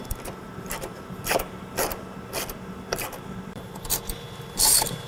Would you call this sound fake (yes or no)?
yes